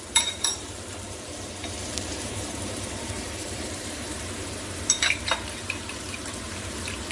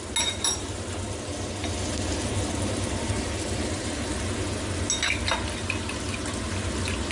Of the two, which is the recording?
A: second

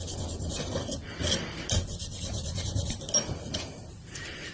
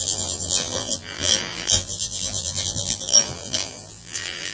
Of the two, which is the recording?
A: first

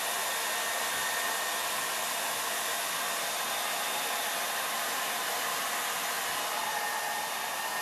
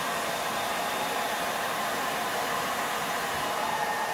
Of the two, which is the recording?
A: first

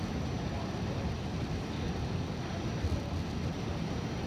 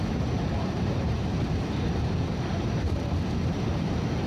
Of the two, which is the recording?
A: first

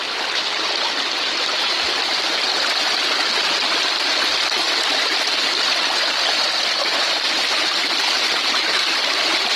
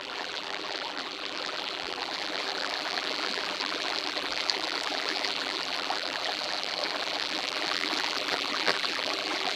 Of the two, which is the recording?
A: first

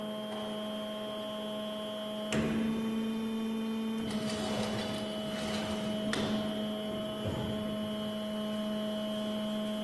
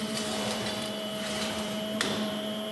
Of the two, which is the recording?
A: first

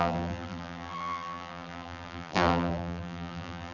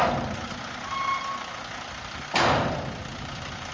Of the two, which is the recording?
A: second